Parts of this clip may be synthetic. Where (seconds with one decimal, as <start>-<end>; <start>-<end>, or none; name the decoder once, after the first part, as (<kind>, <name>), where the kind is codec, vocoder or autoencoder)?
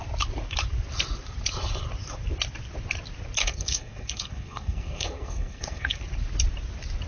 3.4-6.0 (codec, SNAC)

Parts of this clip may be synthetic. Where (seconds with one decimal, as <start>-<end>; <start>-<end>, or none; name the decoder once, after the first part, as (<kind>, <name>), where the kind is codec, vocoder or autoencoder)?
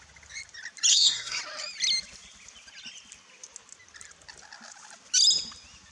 0.9-1.4 (codec, SNAC)